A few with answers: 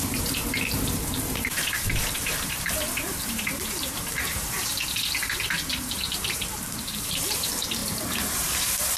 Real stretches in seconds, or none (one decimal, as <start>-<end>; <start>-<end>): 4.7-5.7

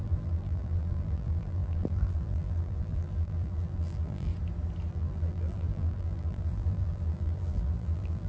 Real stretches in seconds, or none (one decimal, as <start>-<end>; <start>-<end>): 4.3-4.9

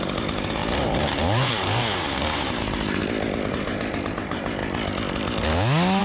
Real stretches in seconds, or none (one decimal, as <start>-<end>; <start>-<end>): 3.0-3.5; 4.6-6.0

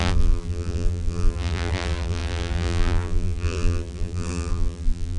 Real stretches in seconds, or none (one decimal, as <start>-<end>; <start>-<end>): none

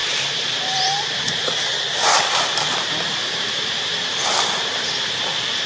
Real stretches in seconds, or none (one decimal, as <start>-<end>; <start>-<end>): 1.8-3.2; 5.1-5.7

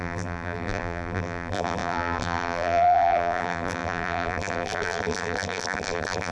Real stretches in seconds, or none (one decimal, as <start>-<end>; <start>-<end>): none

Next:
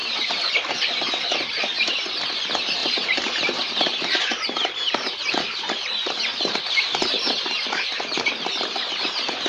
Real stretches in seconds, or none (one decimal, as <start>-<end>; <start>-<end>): 0.0-2.8; 7.9-9.5